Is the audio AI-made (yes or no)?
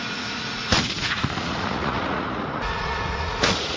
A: yes